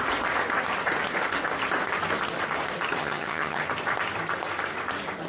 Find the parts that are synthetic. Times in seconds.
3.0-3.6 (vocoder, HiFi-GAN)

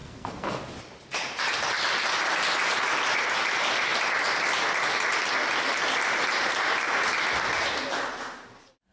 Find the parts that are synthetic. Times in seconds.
0.0-0.6 (codec, SNAC)